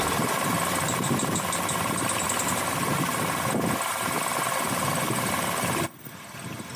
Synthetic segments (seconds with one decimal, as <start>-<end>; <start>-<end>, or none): none